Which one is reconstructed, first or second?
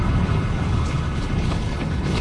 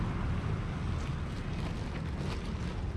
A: first